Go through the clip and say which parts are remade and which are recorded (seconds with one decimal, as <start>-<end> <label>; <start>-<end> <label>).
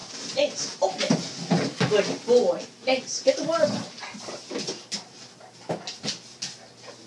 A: 0.0-7.1 recorded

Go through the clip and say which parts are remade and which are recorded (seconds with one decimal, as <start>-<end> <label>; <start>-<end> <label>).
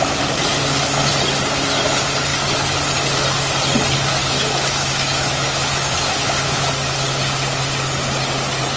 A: 0.0-4.2 recorded; 4.2-6.7 remade; 6.7-8.8 recorded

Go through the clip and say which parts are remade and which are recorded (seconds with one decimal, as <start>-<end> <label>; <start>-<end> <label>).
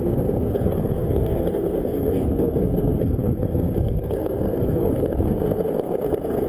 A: 0.0-6.5 remade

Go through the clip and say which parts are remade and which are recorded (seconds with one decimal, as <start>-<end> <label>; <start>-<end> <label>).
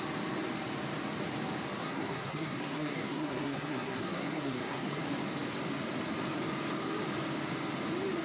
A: 0.0-1.8 recorded; 1.8-5.0 remade; 5.0-8.2 recorded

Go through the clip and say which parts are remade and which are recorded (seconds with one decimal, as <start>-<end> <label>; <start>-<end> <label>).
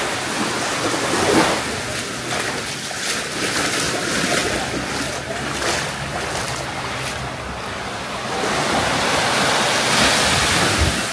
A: 0.0-11.1 recorded